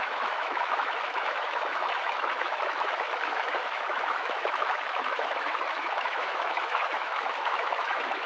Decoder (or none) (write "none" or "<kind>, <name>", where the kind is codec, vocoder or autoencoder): autoencoder, DAC-VAE